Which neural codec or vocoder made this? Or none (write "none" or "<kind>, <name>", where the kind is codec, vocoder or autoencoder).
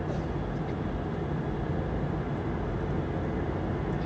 none